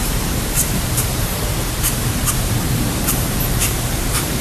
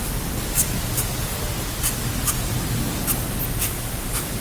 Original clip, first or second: second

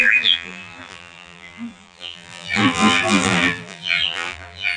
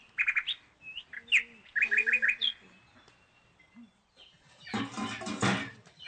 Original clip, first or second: second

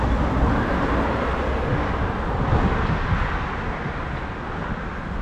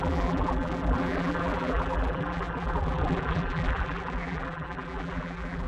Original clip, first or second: first